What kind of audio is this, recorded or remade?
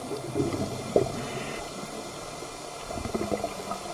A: recorded